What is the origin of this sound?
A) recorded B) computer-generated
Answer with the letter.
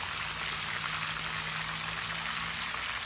A